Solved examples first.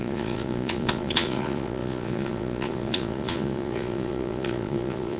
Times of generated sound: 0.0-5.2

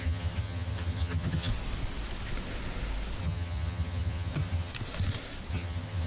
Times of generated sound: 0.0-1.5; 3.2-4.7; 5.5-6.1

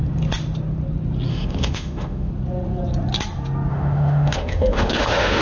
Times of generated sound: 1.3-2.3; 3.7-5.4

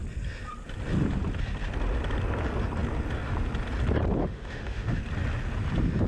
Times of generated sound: 4.2-5.0